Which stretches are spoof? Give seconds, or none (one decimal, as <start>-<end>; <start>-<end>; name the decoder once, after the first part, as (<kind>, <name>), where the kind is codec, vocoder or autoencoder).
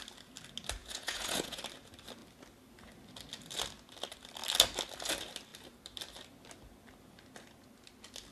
0.8-1.6 (vocoder, Vocos)